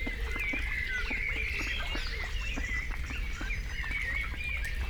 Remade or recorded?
recorded